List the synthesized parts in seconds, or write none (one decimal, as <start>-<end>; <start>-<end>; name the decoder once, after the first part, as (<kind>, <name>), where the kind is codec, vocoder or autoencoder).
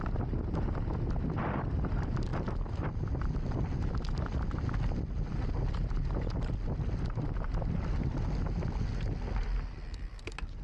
none